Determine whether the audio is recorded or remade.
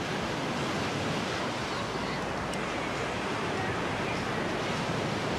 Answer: recorded